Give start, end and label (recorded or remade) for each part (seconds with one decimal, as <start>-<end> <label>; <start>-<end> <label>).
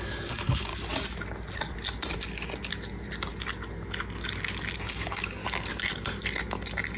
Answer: 0.0-0.7 remade; 0.7-4.9 recorded; 4.9-5.4 remade; 5.4-7.0 recorded